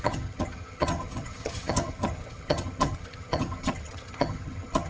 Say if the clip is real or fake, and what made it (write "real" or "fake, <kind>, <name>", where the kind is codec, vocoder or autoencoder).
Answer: fake, vocoder, HiFi-GAN